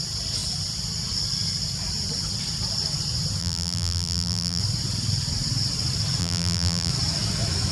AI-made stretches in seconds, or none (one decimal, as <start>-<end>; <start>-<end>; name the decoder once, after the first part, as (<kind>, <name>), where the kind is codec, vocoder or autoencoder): 3.4-4.6 (vocoder, BigVGAN v2); 6.2-6.9